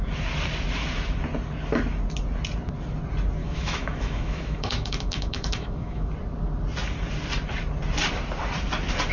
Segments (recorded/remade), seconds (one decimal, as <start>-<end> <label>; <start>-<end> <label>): 0.0-3.4 recorded; 3.4-6.1 remade; 6.1-9.1 recorded